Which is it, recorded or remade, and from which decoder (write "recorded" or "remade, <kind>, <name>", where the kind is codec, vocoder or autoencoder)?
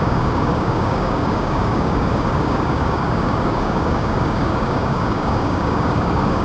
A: remade, codec, DAC